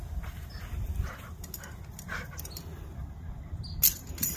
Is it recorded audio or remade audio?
recorded